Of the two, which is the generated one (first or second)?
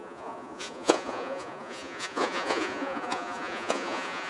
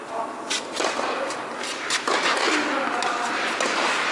first